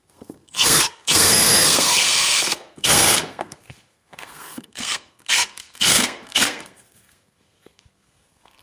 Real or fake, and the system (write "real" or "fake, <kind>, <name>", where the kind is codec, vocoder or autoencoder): fake, codec, SNAC